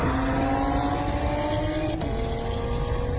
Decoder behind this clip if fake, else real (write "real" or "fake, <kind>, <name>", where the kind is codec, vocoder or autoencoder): real